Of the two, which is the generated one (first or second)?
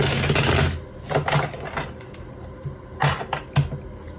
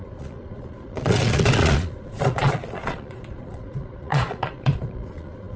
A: second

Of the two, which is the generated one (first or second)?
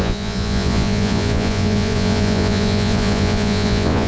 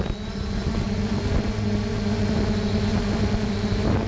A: first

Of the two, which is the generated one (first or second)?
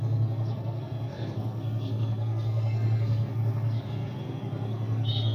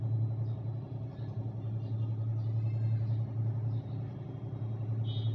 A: first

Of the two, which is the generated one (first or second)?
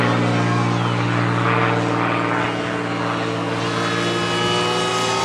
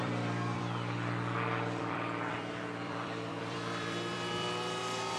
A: second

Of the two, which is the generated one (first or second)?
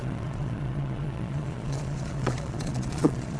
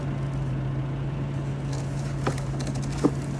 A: first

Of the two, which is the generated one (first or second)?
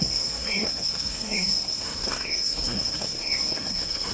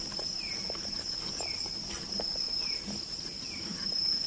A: first